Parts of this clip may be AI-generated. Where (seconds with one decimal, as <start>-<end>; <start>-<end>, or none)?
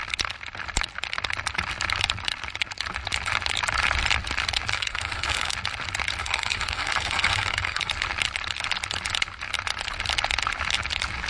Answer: 4.7-5.5; 6.2-7.9